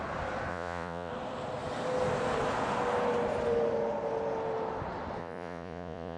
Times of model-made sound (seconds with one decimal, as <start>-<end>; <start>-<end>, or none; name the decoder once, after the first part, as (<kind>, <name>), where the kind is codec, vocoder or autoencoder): 0.5-1.1 (vocoder, Vocos); 5.2-6.2